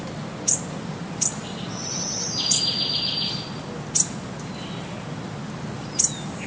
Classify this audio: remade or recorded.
recorded